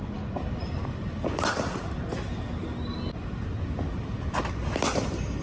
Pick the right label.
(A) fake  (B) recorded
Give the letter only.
B